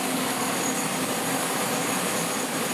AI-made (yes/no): yes